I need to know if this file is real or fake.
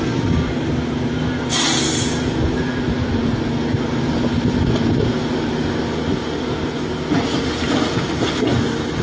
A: real